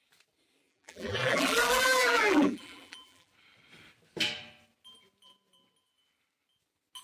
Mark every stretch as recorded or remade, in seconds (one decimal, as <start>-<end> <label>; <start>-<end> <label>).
0.0-0.7 recorded; 0.7-3.3 remade; 3.3-7.0 recorded